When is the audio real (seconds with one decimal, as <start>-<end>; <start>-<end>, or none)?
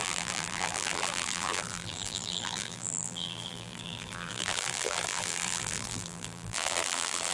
none